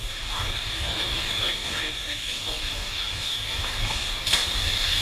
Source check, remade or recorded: remade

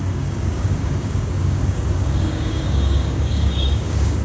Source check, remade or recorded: remade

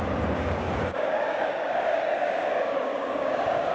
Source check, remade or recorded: remade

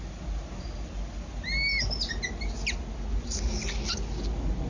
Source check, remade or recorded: recorded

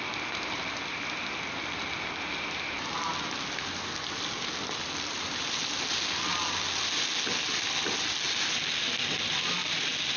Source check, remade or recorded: recorded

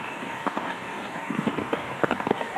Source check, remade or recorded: remade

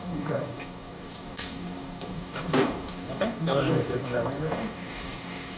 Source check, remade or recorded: remade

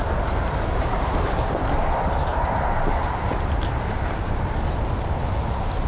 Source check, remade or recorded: recorded